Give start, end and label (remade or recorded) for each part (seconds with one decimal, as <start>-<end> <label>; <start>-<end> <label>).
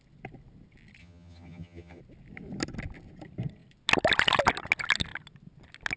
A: 0.0-1.0 recorded; 1.0-2.0 remade; 2.0-6.0 recorded